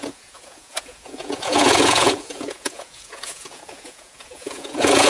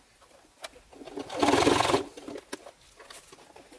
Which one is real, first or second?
second